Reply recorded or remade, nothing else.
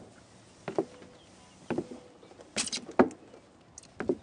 recorded